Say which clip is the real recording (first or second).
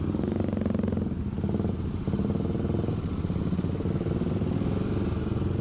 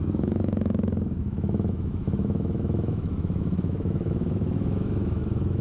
first